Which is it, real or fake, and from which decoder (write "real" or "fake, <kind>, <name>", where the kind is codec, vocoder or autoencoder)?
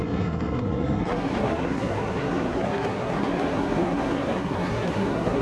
fake, codec, SNAC